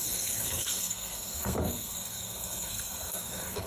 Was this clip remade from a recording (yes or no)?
yes